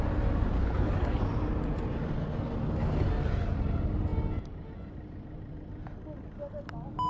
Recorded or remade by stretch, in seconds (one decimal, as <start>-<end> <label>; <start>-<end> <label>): 0.0-0.6 recorded; 0.6-1.2 remade; 1.2-7.1 recorded